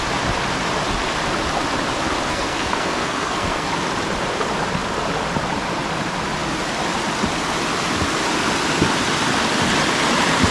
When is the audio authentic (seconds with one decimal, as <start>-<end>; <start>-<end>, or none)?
0.0-2.3; 3.7-10.5